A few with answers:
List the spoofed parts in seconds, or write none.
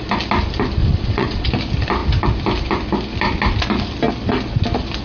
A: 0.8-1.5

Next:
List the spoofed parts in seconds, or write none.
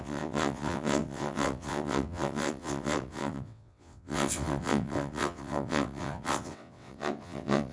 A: 0.0-7.7